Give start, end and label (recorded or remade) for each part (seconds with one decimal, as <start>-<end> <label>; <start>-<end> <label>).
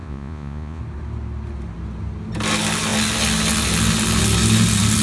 0.0-0.8 remade; 0.8-5.0 recorded